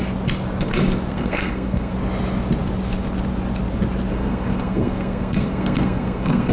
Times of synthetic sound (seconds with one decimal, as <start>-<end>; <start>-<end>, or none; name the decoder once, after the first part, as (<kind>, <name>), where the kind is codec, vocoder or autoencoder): 1.1-1.9 (codec, SNAC); 4.1-6.5